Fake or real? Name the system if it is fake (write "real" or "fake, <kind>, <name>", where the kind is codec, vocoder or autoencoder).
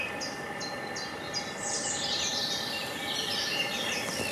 real